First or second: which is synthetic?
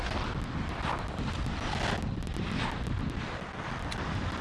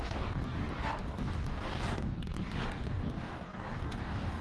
second